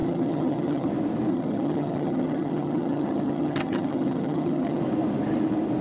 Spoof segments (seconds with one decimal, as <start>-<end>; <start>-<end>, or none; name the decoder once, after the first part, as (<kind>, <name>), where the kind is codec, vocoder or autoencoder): 0.0-0.9 (vocoder, HiFi-GAN); 1.3-4.8